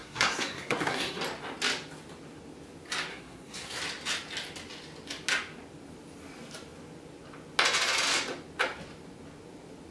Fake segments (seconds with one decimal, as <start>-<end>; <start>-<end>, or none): 0.0-1.2; 3.1-3.8